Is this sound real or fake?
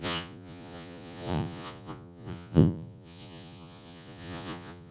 fake